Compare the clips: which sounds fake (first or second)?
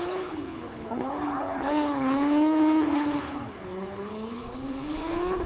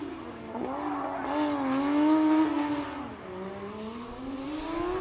first